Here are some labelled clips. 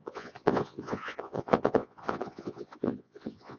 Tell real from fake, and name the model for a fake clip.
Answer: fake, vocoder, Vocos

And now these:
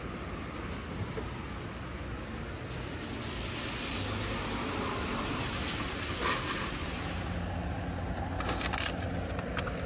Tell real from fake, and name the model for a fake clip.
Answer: real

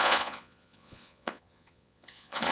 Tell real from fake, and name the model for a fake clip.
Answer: fake, vocoder, Vocos